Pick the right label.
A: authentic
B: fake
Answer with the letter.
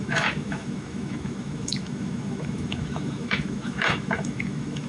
B